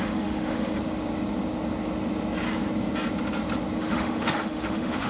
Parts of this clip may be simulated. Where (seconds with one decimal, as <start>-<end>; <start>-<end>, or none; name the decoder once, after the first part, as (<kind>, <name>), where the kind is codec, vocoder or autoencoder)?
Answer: 0.0-0.7 (autoencoder, DAC-VAE); 3.8-5.1